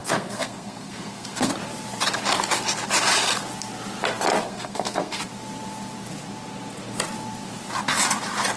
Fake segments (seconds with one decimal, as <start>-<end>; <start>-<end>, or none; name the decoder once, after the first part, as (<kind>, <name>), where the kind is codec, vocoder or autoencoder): 0.0-1.5 (codec, SNAC); 4.4-5.2